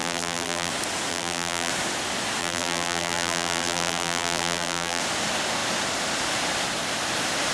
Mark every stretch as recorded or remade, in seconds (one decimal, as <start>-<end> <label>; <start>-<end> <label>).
0.0-0.7 remade; 0.7-1.1 recorded; 1.1-1.7 remade; 1.7-2.4 recorded; 2.4-5.0 remade; 5.0-7.5 recorded